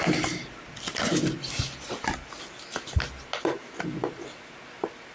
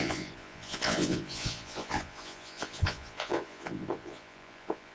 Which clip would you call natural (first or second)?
first